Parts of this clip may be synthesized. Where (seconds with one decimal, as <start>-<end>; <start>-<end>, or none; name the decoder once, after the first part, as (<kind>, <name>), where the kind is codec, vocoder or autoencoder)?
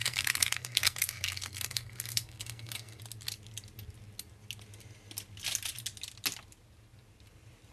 0.0-3.0 (codec, SNAC)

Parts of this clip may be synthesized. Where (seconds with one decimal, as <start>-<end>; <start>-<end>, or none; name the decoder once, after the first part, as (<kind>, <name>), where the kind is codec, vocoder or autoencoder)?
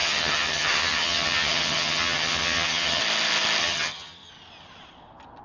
0.0-3.0 (vocoder, HiFi-GAN); 3.6-4.3